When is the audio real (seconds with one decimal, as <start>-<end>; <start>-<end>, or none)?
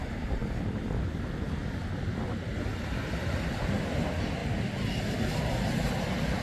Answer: 0.0-6.4